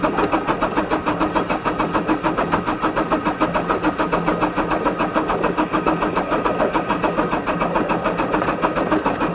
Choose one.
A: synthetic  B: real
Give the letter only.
B